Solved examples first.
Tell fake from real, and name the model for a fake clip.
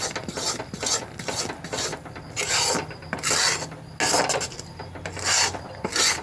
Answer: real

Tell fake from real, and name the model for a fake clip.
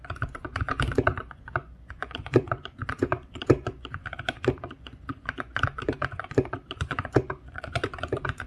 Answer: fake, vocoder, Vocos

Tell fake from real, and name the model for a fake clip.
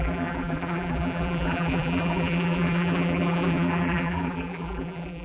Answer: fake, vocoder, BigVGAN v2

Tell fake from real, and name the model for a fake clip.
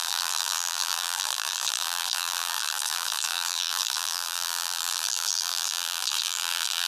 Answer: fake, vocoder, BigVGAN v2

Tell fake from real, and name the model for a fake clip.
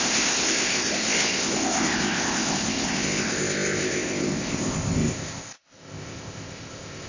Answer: fake, codec, ZipCodec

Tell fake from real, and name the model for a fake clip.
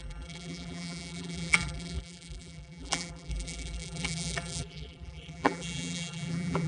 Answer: fake, vocoder, BigVGAN v2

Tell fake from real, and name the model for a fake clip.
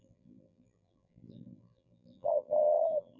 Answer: fake, vocoder, BigVGAN v2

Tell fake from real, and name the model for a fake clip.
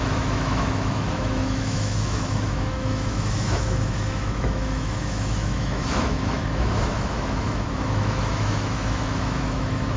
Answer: fake, autoencoder, DAC-VAE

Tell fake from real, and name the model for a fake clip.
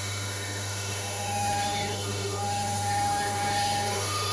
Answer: fake, autoencoder, DAC-VAE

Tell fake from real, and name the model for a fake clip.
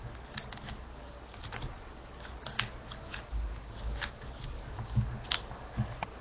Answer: real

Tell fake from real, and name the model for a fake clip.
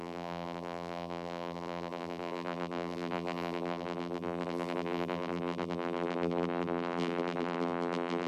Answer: fake, vocoder, BigVGAN v2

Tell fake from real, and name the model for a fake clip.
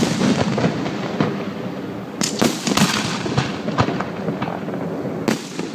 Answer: real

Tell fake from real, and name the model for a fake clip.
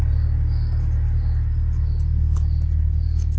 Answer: real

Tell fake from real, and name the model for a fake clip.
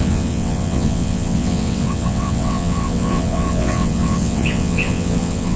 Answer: fake, vocoder, WaveNeXt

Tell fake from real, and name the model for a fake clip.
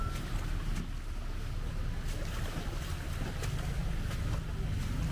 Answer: real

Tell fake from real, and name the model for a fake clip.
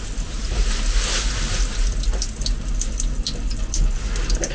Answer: real